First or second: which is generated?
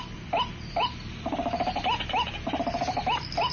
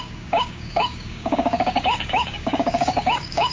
second